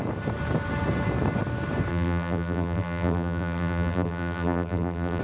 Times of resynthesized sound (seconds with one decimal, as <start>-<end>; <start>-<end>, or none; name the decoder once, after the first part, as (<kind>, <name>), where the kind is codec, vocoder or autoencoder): 1.9-5.2 (vocoder, BigVGAN v2)